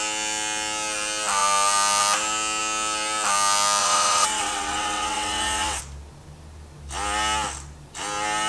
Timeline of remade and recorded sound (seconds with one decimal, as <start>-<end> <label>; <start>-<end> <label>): 0.0-3.8 recorded; 3.8-5.8 remade; 5.8-8.5 recorded